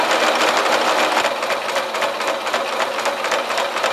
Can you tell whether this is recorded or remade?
recorded